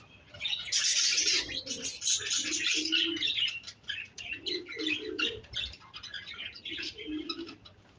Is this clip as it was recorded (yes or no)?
yes